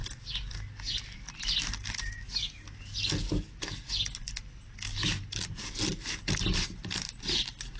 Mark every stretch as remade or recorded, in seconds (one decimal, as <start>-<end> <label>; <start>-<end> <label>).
0.0-7.8 recorded